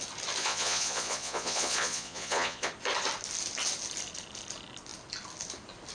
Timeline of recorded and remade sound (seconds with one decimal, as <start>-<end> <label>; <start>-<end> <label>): 0.0-0.4 recorded; 0.4-2.7 remade; 2.7-5.9 recorded